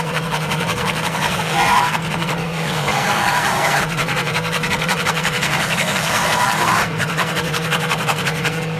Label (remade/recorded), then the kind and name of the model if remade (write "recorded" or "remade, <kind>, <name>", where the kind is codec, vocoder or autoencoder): remade, codec, SNAC